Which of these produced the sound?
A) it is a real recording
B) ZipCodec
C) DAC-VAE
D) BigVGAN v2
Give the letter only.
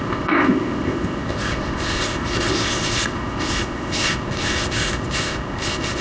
B